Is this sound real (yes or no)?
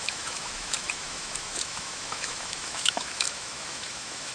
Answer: no